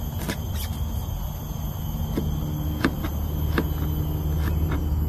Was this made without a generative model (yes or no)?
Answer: yes